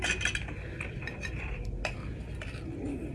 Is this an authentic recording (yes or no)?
yes